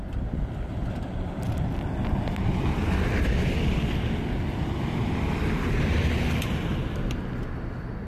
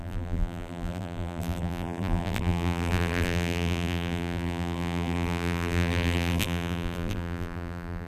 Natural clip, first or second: first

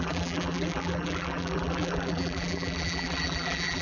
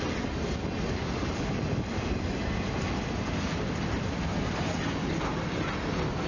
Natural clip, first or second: second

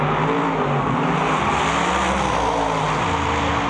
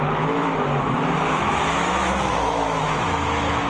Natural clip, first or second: first